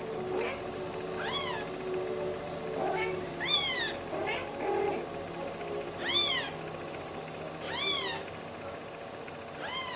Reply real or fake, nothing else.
real